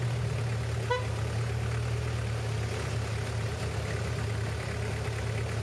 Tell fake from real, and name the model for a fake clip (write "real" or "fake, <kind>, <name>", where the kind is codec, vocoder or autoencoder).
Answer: real